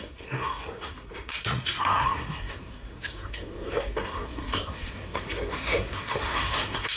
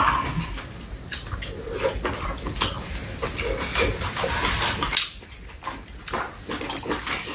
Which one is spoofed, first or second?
first